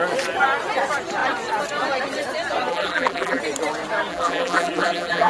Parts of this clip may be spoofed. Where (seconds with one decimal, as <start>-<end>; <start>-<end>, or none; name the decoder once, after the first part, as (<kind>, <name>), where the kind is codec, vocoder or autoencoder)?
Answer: 2.7-3.4 (vocoder, BigVGAN v2); 4.1-5.3